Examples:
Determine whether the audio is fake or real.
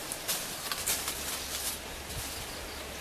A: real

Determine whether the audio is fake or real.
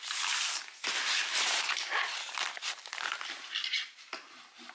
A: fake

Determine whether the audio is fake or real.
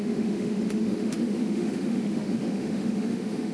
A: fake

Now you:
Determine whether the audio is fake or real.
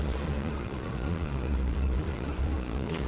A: fake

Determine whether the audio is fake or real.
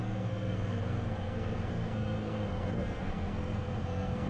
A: fake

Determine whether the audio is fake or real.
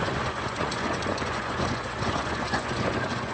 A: fake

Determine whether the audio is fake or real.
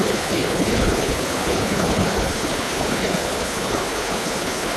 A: fake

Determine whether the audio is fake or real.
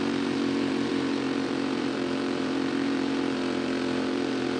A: fake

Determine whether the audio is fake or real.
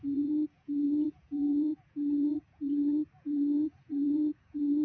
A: fake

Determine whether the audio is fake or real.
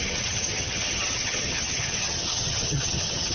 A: fake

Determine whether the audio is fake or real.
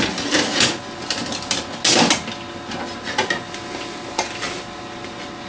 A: real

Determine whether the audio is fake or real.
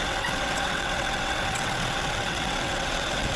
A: fake